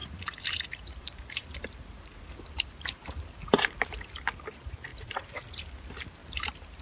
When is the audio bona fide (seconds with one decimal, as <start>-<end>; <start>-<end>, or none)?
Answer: 4.1-4.9; 5.4-6.2